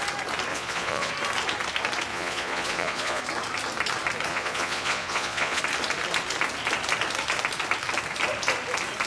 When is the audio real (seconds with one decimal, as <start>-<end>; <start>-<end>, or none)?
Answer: 0.0-0.5; 1.1-2.1; 3.2-4.3; 5.6-9.1